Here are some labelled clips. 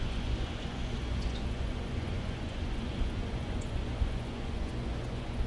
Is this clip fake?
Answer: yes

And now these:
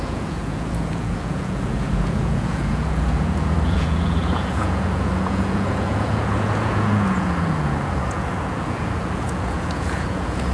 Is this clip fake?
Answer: yes